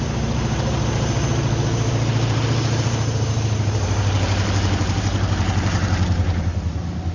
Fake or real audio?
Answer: fake